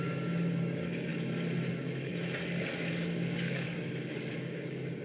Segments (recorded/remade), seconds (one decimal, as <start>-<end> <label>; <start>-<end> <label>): 0.0-1.1 remade; 1.1-1.7 recorded; 1.7-2.1 remade; 2.1-2.9 recorded; 2.9-5.0 remade